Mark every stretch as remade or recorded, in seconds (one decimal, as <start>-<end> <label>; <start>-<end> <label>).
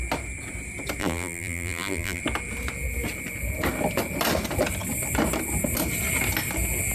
0.0-1.0 recorded; 1.0-2.2 remade; 2.2-6.9 recorded